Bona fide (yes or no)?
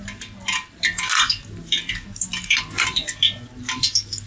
yes